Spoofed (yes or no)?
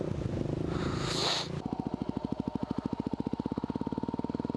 no